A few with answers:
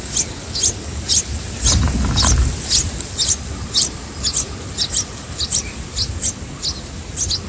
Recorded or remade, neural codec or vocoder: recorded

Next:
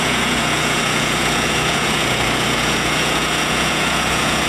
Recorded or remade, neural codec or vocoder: remade, vocoder, Vocos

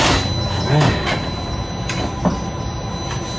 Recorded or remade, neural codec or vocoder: recorded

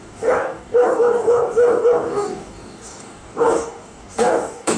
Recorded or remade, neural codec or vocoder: remade, codec, DAC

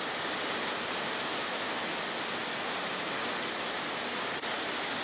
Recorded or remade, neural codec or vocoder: recorded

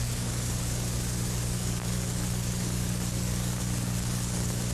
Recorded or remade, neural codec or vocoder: remade, codec, DAC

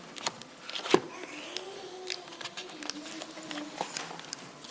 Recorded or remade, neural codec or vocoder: recorded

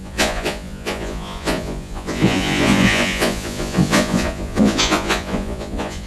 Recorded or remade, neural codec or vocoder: remade, vocoder, Vocos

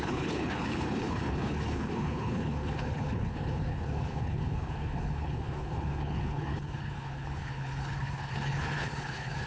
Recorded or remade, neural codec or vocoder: remade, codec, HILCodec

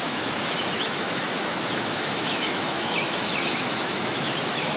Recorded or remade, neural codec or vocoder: remade, autoencoder, DAC-VAE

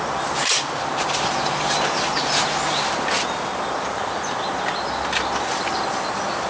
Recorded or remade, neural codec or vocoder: recorded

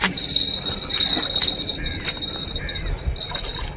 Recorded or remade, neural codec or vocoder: recorded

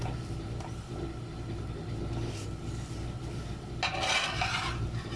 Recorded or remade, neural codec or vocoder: recorded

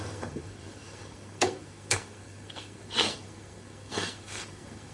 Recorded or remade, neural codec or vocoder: remade, codec, SNAC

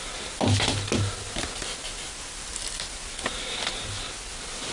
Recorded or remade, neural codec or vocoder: recorded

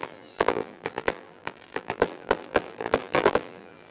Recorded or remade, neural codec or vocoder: remade, vocoder, BigVGAN v2